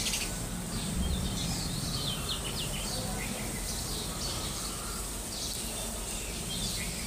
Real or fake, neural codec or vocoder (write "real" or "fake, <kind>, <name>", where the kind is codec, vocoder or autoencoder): fake, vocoder, BigVGAN v2